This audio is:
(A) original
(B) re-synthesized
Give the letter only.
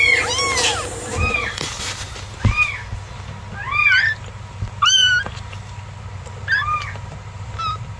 A